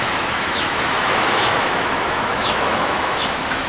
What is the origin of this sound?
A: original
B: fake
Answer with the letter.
B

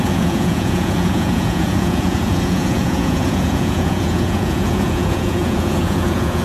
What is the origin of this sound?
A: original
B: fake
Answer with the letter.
B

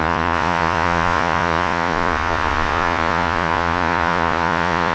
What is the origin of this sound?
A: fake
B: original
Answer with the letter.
A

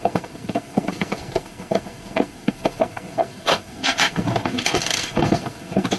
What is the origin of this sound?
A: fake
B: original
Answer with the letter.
A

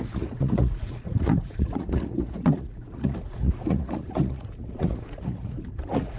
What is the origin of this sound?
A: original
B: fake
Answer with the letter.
B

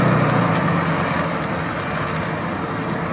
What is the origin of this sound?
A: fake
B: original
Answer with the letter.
B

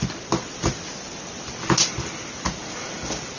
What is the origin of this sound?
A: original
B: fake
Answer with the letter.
A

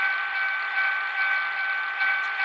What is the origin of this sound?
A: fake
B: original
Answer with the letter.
B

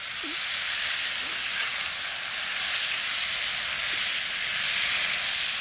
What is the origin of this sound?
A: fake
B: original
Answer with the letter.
B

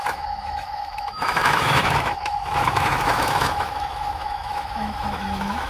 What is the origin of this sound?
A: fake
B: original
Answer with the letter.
A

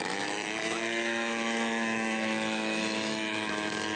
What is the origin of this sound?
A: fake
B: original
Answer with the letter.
A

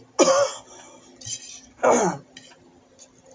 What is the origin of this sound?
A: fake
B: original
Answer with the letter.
B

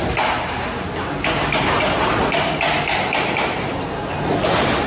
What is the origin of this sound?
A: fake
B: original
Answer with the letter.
B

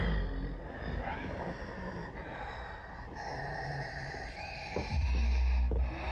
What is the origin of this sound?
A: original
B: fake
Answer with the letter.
A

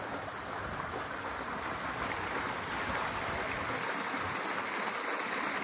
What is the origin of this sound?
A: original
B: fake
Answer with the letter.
A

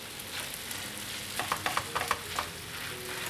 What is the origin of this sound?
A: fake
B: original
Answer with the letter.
B